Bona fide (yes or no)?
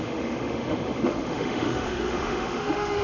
no